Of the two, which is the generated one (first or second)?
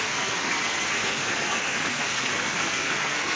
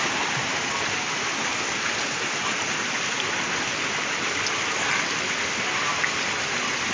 first